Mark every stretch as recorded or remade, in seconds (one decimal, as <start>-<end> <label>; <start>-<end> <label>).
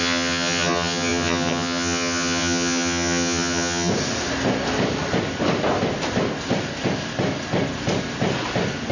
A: 0.0-3.9 remade; 3.9-8.9 recorded